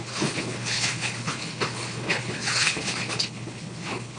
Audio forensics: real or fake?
fake